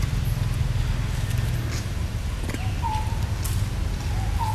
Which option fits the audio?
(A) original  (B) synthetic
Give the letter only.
A